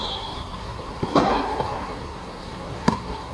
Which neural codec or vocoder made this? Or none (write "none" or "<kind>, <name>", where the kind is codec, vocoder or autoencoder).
codec, SNAC